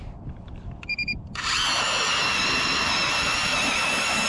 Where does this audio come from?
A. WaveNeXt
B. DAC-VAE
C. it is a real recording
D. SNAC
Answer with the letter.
C